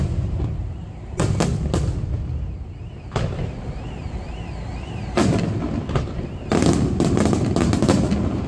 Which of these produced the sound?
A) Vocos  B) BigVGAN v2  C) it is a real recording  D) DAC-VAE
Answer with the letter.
C